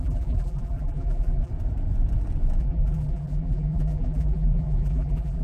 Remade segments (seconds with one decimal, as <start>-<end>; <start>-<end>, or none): 0.0-1.5; 2.6-5.4